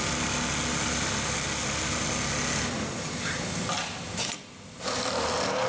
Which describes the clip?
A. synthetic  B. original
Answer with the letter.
B